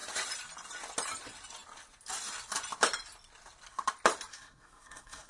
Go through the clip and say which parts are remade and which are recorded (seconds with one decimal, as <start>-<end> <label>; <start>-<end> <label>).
0.0-4.3 recorded; 4.3-5.3 remade